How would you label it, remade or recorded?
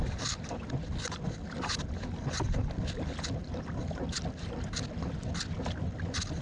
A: recorded